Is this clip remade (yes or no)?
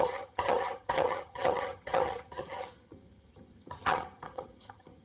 yes